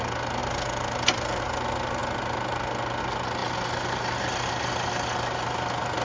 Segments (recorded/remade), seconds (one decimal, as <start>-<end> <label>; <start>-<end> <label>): 0.0-6.0 recorded